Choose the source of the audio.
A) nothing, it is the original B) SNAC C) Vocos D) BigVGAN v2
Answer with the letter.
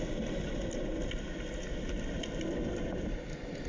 A